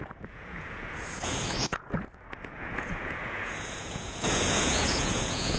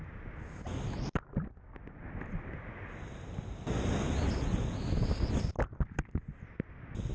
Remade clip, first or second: first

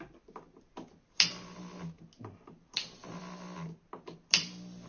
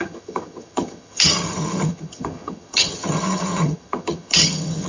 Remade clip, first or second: second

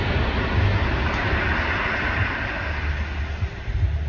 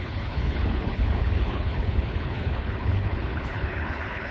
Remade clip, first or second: second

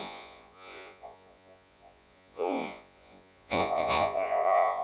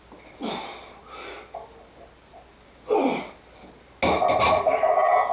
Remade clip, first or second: first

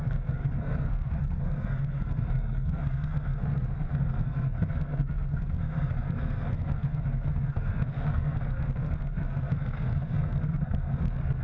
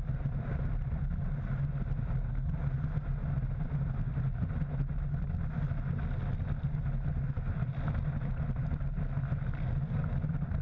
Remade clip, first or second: first